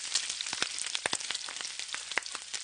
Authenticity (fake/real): real